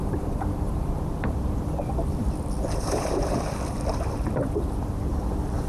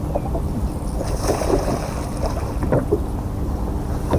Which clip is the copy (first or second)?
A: first